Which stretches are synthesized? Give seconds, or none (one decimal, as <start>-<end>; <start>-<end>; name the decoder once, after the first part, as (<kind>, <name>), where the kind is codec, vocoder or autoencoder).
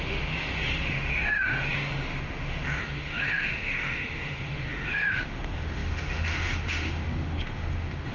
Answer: 0.0-8.1 (autoencoder, DAC-VAE)